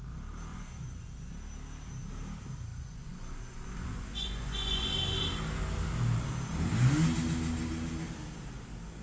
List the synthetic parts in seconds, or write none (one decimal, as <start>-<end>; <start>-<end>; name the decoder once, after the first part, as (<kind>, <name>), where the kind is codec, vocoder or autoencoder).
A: 0.5-1.3 (vocoder, Vocos); 2.7-4.9